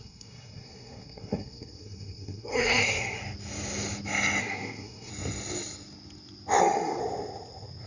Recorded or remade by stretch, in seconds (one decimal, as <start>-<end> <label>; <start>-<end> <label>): 0.0-3.2 remade; 3.2-4.4 recorded; 4.4-5.1 remade; 5.1-6.6 recorded; 6.6-7.0 remade; 7.0-7.9 recorded